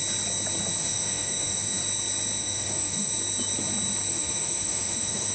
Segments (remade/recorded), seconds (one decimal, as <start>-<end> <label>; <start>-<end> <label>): 0.0-0.8 recorded; 0.8-1.8 remade; 1.8-2.4 recorded; 2.4-3.1 remade; 3.1-4.1 recorded; 4.1-5.3 remade